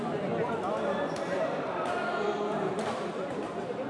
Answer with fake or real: real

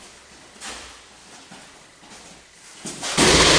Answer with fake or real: real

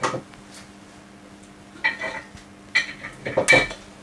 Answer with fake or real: real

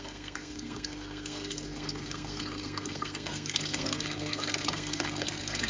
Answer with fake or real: fake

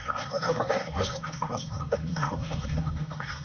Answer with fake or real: fake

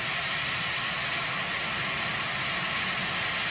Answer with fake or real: real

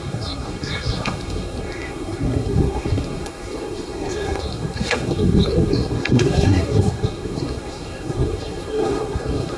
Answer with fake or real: fake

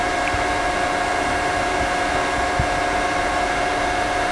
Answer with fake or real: real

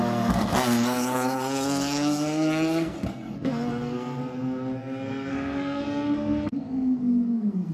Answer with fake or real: fake